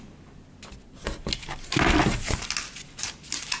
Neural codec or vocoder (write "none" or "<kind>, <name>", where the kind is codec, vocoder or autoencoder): none